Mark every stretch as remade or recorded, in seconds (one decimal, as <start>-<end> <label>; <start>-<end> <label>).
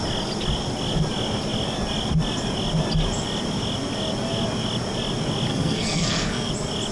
0.0-5.5 recorded; 5.5-6.5 remade; 6.5-6.9 recorded